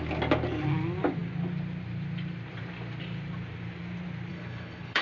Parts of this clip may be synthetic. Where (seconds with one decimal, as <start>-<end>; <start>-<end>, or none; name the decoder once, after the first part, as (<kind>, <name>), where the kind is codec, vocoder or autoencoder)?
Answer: 4.3-5.0 (codec, HILCodec)